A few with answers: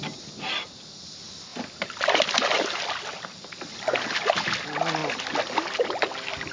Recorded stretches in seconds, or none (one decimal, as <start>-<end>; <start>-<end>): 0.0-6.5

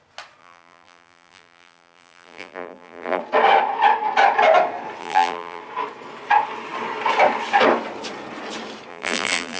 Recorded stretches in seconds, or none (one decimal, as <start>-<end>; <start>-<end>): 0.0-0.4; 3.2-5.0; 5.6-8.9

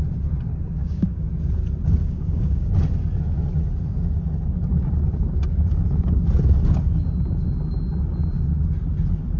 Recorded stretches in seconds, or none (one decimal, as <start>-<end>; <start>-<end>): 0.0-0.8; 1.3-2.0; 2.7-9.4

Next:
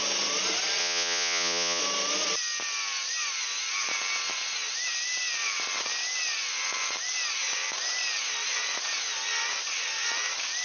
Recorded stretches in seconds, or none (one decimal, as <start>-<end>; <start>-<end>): 0.0-0.8; 1.8-10.6

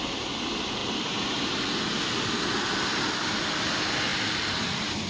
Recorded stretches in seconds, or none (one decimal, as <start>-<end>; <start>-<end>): 0.0-5.1

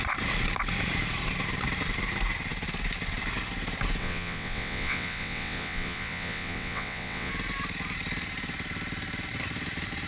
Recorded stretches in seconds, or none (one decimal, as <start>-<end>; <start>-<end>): 0.0-4.0; 7.3-10.1

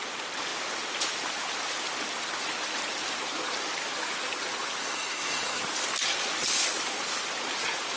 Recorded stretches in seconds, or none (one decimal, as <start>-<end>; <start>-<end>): 0.0-4.8; 5.6-8.0

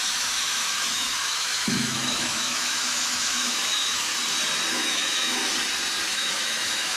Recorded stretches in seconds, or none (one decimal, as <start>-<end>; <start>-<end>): 4.1-4.7; 5.4-6.1